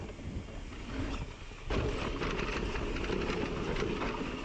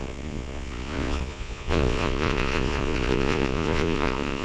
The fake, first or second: second